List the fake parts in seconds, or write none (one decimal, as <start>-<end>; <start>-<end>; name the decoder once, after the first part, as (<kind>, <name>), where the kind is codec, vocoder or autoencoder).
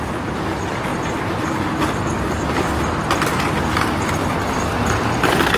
0.9-4.3 (vocoder, BigVGAN v2)